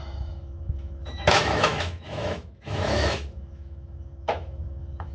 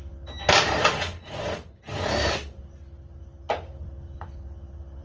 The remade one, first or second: first